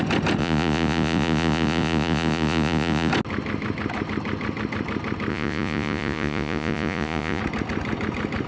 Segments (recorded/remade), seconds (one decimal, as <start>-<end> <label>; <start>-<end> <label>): 0.0-0.4 recorded; 0.4-3.1 remade; 3.1-5.3 recorded; 5.3-7.4 remade; 7.4-8.5 recorded